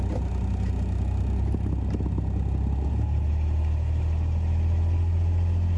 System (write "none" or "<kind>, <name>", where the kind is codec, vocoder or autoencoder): none